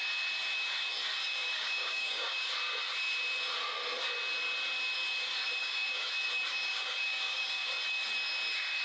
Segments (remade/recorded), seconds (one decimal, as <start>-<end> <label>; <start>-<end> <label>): 0.0-1.2 recorded; 1.2-2.5 remade; 2.5-5.6 recorded; 5.6-6.1 remade; 6.1-6.5 recorded; 6.5-7.7 remade; 7.7-8.8 recorded